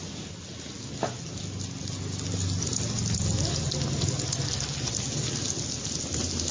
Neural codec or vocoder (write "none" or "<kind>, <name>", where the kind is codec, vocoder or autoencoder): none